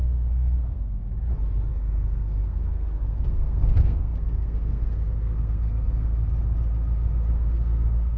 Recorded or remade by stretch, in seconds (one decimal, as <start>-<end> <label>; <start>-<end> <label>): 0.0-1.0 remade; 1.0-1.7 recorded; 1.7-6.2 remade; 6.2-7.3 recorded; 7.3-8.2 remade